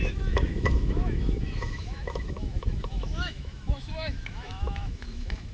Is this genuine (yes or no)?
no